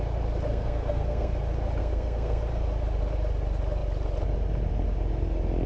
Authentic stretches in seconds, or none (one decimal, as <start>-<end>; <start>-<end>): 0.0-0.5; 1.3-1.8; 2.4-5.7